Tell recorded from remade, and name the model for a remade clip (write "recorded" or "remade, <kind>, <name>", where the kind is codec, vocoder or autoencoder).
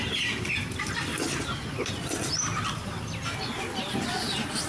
recorded